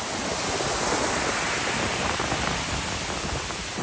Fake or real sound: real